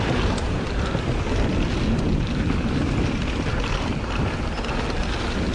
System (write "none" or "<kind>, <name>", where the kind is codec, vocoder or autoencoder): none